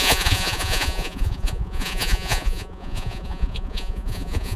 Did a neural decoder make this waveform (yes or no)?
yes